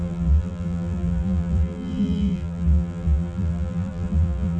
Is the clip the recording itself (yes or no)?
no